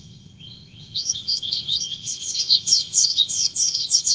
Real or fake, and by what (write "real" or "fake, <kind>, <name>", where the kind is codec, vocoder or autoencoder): fake, codec, ZipCodec